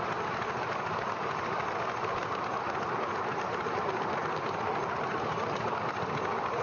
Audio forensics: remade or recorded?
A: recorded